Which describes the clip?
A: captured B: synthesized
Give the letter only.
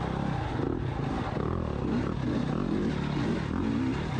A